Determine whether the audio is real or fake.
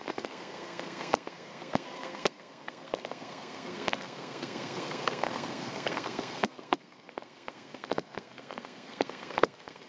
fake